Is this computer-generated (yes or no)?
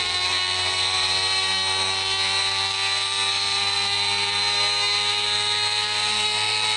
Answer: yes